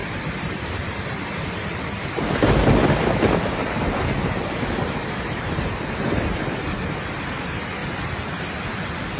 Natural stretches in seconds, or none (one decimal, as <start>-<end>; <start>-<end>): 0.7-9.2